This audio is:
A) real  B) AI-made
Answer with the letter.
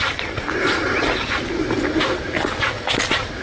A